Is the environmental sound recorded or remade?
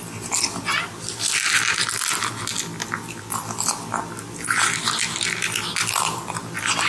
recorded